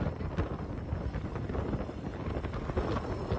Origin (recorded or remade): recorded